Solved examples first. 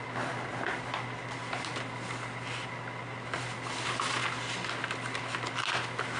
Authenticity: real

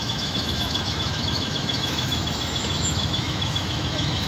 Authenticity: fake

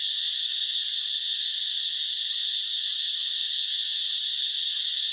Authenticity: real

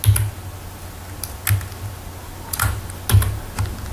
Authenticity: real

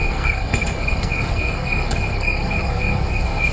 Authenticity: fake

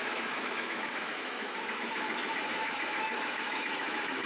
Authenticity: fake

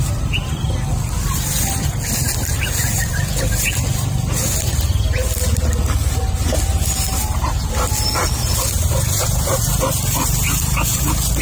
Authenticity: real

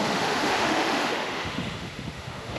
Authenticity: fake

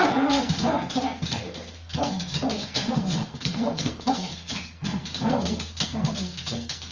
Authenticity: fake